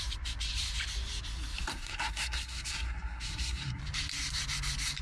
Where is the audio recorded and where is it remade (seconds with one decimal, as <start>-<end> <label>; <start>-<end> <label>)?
0.0-1.7 recorded; 1.7-3.8 remade; 3.8-5.0 recorded